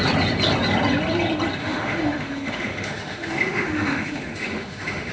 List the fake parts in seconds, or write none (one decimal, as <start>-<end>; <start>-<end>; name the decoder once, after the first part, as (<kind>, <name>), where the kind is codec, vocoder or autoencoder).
1.6-5.1 (autoencoder, DAC-VAE)